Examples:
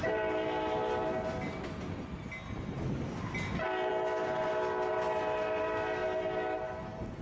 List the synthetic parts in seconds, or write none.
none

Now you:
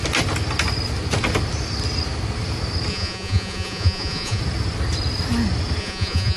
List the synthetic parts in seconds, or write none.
2.9-4.4 (vocoder, Vocos); 5.8-6.4